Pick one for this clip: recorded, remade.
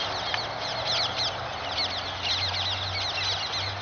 recorded